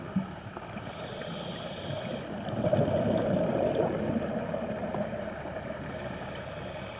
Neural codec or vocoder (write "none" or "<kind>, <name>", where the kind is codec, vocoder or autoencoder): none